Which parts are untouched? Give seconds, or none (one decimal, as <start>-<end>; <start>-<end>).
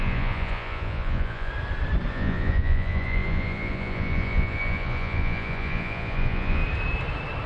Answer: 1.5-2.1; 6.6-7.5